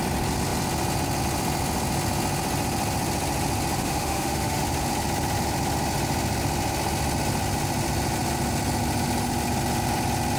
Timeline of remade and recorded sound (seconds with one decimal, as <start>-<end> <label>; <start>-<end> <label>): 0.0-3.8 recorded; 3.8-4.6 remade; 4.6-10.4 recorded